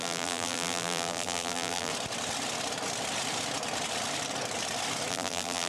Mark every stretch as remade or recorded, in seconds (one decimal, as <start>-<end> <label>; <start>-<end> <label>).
0.0-1.9 remade; 1.9-5.1 recorded; 5.1-5.7 remade